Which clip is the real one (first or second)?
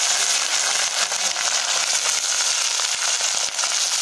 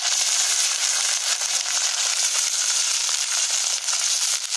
first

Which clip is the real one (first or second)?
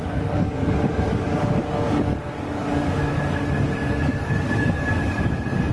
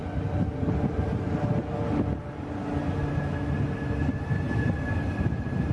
second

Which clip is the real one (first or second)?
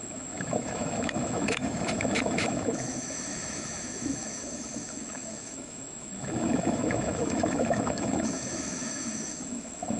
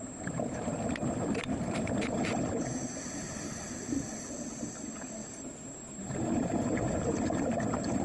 second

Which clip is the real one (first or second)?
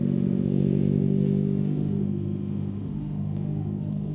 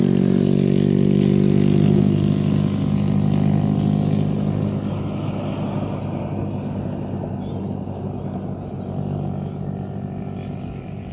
second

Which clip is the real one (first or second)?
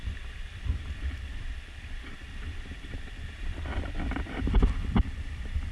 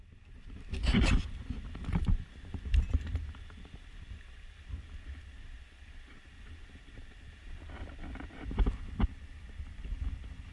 second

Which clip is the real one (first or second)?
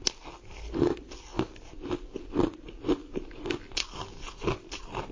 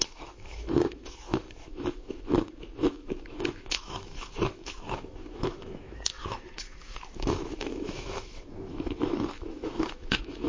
first